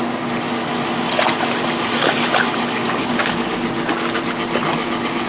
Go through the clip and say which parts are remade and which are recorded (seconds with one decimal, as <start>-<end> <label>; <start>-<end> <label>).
0.0-2.8 recorded; 2.8-4.2 remade; 4.2-5.3 recorded